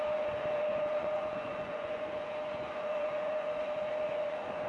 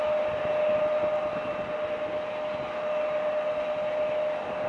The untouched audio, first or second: second